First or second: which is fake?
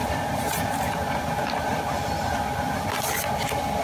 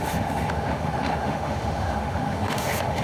second